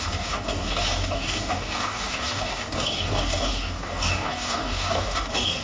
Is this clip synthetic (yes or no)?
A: yes